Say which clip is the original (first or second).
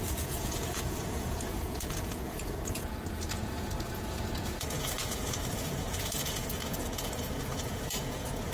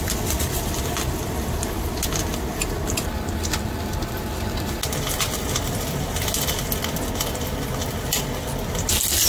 second